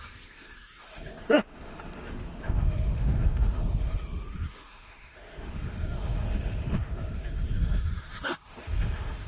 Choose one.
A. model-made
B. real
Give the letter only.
A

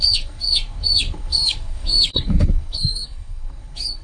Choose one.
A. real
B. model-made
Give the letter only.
B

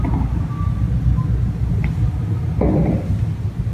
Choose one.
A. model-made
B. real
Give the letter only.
B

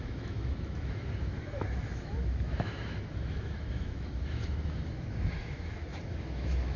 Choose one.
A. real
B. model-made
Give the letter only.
B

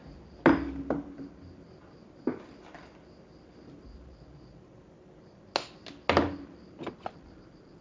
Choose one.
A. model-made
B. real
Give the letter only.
B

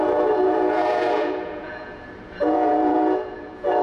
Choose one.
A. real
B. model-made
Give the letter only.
B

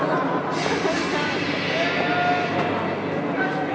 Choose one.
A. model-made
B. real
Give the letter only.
B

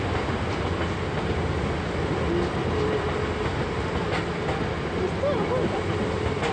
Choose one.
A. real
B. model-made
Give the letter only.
A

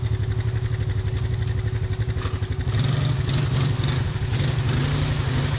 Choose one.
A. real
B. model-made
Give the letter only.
A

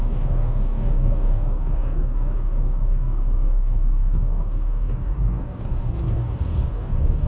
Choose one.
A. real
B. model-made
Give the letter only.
B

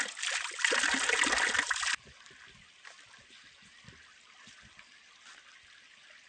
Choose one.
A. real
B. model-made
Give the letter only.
A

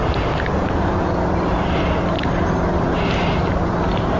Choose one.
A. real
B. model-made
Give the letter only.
A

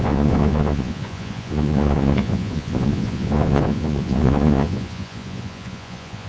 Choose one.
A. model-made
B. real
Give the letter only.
A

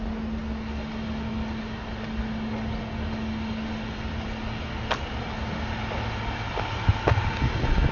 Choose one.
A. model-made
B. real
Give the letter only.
B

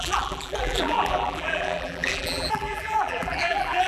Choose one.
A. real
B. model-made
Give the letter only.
B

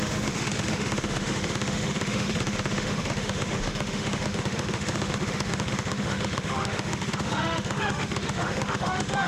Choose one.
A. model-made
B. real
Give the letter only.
A